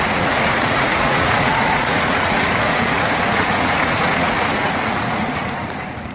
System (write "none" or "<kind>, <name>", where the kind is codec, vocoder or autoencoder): vocoder, Vocos